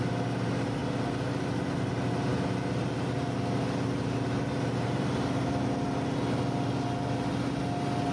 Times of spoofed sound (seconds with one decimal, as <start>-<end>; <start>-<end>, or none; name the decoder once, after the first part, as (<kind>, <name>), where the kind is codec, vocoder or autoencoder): none